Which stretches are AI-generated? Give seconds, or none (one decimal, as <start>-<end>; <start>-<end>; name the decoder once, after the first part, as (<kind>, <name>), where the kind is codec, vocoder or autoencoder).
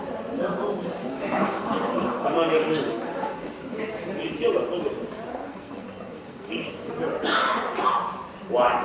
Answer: 1.0-3.8 (codec, SNAC); 5.3-6.9